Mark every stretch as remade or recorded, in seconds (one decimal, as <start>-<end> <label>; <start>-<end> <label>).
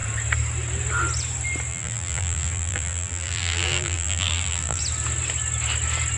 0.0-1.7 recorded; 1.7-4.8 remade; 4.8-6.2 recorded